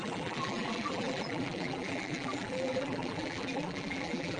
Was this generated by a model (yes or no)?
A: yes